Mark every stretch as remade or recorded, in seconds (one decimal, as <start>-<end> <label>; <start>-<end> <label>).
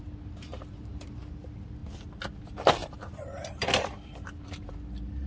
0.0-0.5 recorded; 0.5-1.2 remade; 1.2-2.8 recorded; 2.8-4.7 remade; 4.7-5.3 recorded